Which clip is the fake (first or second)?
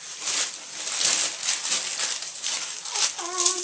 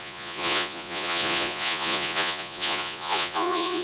second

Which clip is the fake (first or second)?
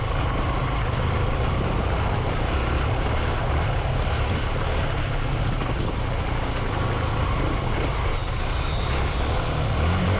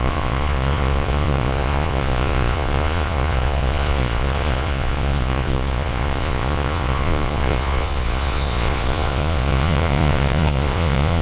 second